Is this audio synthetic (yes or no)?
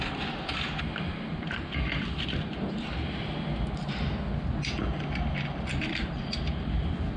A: no